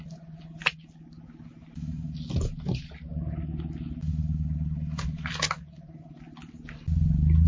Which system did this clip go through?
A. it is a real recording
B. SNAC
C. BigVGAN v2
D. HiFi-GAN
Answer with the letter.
A